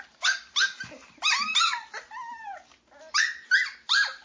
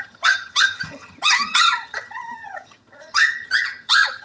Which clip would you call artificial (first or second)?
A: second